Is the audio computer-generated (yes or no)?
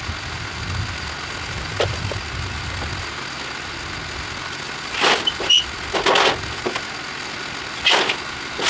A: no